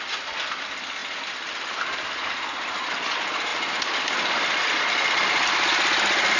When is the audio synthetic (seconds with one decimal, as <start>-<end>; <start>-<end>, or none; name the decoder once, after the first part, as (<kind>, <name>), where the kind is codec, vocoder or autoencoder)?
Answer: none